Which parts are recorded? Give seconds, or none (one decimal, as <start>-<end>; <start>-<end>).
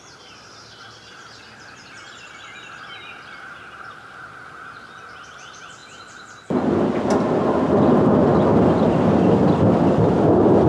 0.0-10.7